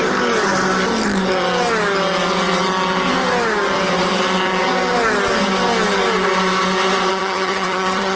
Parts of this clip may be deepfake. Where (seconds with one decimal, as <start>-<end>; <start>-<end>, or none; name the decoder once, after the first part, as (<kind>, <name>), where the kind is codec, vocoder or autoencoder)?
7.1-8.2 (vocoder, HiFi-GAN)